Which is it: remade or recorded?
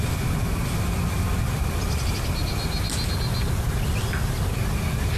recorded